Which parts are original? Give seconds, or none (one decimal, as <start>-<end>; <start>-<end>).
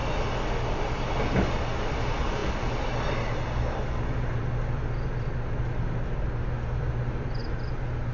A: 0.0-8.1